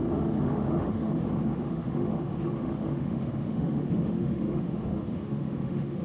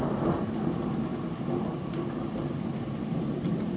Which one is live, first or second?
second